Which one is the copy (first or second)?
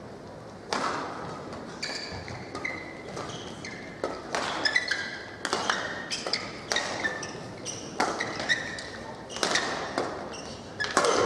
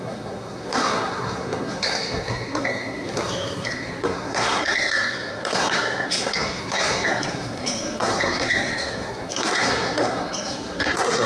second